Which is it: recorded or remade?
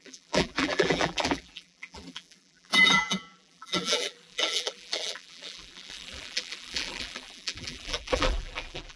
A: remade